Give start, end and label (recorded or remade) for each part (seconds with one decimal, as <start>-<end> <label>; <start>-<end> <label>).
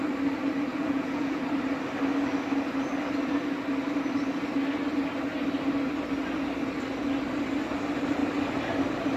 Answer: 0.0-0.7 recorded; 0.7-1.4 remade; 1.4-9.2 recorded